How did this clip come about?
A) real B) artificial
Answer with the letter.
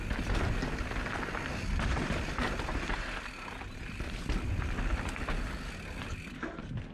A